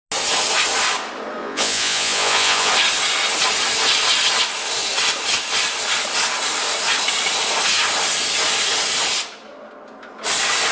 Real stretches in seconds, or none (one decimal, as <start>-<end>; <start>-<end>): 0.0-1.4; 2.7-10.7